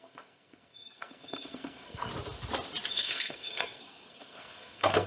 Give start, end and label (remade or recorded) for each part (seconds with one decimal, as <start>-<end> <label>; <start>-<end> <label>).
0.0-2.1 remade; 2.1-2.9 recorded; 2.9-5.1 remade